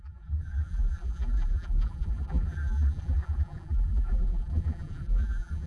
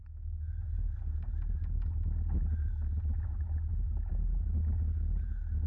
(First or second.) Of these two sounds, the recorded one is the second